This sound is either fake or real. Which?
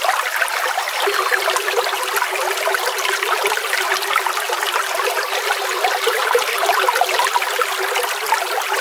real